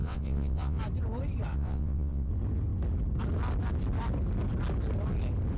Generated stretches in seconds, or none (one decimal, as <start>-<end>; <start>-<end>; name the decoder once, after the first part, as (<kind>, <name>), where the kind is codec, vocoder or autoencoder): 0.0-0.8 (vocoder, WaveNeXt); 1.5-2.3